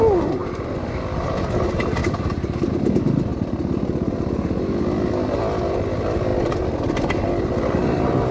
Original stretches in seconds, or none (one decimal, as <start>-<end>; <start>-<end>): 0.0-2.0; 2.7-8.3

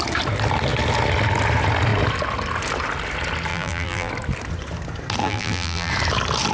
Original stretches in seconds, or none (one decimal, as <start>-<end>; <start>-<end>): 0.0-3.5; 4.1-5.2; 5.9-6.5